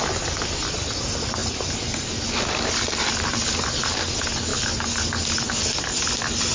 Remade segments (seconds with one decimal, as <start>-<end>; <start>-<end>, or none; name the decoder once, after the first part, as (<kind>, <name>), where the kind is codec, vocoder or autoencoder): 1.4-2.3 (vocoder, BigVGAN v2); 3.0-4.0; 4.5-5.5